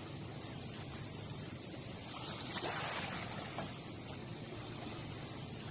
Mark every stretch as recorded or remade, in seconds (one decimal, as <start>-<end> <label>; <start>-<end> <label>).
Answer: 0.0-4.2 recorded; 4.2-5.1 remade; 5.1-5.7 recorded